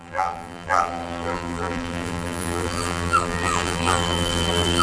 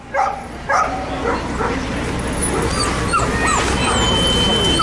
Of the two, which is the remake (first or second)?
first